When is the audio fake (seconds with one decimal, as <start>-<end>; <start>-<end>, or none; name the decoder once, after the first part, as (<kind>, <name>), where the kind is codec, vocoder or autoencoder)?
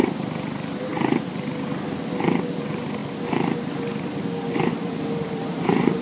0.0-0.9 (vocoder, BigVGAN v2); 2.5-3.0; 4.7-6.0